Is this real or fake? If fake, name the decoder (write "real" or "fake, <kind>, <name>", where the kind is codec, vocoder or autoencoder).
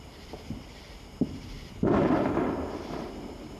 real